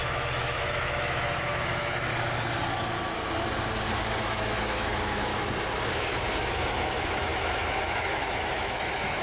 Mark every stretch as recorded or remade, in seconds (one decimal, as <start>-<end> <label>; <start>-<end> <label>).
0.0-2.1 remade; 2.1-4.2 recorded; 4.2-5.3 remade; 5.3-6.4 recorded; 6.4-9.2 remade